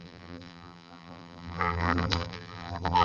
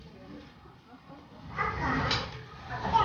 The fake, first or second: first